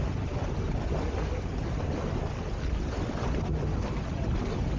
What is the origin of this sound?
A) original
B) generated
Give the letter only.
A